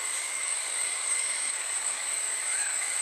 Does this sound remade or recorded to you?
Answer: remade